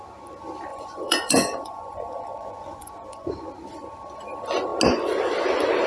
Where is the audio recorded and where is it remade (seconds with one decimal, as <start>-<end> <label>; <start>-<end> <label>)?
0.0-0.7 recorded; 0.7-3.3 remade; 3.3-5.9 recorded